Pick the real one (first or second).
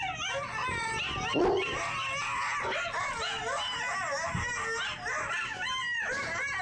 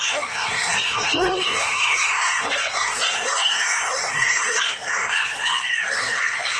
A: first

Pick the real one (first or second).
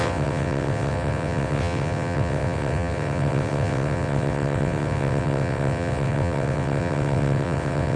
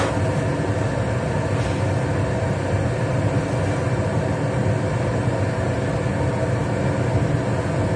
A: second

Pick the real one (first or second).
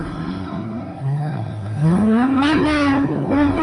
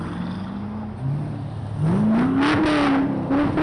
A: second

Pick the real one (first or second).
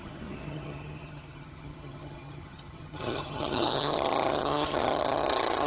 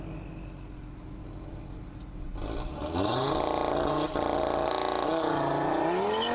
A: second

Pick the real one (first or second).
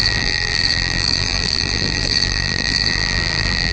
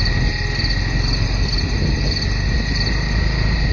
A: second